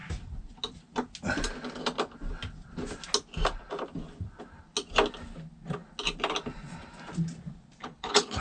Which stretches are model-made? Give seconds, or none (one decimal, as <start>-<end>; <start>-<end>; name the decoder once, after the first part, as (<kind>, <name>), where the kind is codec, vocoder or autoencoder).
7.8-8.4 (codec, HILCodec)